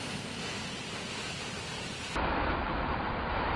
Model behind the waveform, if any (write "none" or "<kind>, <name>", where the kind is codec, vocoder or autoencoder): none